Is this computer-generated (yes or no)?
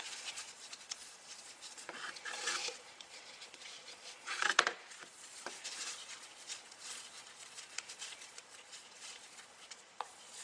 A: yes